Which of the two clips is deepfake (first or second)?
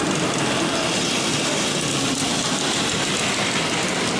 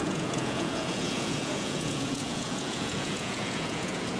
second